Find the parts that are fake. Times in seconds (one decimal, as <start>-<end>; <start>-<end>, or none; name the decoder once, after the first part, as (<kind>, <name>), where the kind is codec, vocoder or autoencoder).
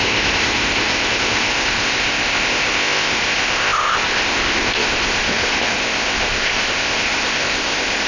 0.0-8.1 (codec, ZipCodec)